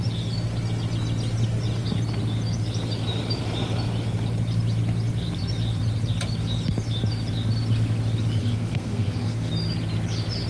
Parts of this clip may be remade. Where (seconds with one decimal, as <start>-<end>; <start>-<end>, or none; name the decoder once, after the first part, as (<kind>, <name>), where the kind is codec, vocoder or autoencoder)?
8.4-9.5 (codec, SNAC)